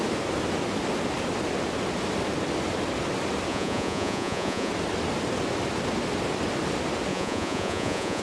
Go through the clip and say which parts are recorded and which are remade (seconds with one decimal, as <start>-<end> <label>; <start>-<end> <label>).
0.0-3.5 recorded; 3.5-4.7 remade; 4.7-7.1 recorded; 7.1-8.2 remade